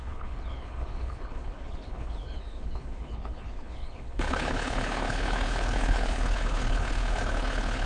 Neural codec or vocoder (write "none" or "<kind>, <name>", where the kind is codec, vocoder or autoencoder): codec, HILCodec